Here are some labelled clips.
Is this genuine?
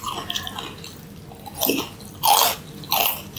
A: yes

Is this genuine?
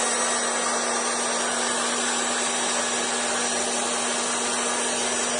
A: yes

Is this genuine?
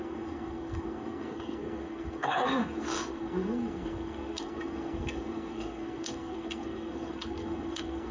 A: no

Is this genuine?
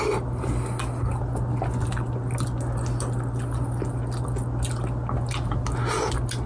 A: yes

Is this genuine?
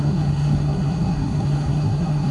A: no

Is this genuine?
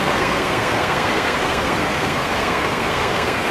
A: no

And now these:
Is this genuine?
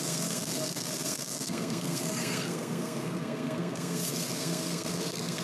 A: no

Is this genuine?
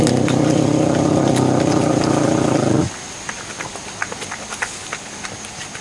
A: yes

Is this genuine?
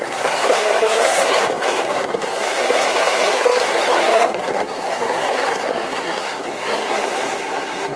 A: no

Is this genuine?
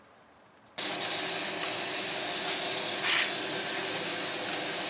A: yes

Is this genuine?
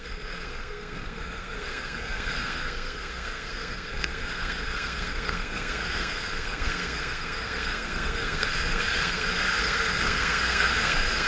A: no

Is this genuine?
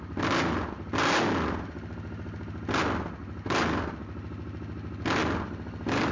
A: yes